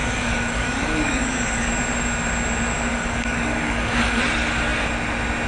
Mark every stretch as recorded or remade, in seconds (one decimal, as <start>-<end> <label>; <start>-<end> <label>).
0.0-1.7 remade; 1.7-2.9 recorded; 2.9-4.2 remade; 4.2-5.5 recorded